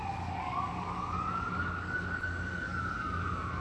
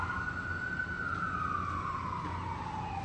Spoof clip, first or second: first